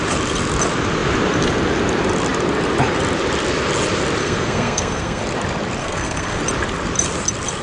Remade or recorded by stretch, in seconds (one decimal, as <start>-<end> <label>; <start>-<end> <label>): 0.0-4.2 recorded; 4.2-5.2 remade; 5.2-5.8 recorded; 5.8-6.4 remade; 6.4-7.6 recorded